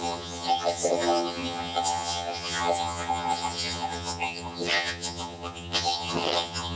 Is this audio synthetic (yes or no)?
yes